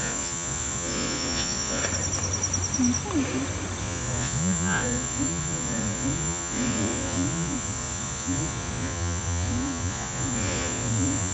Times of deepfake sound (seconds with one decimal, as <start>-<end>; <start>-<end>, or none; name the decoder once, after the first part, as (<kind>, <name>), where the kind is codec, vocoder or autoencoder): 0.0-1.8 (vocoder, Vocos); 3.8-11.3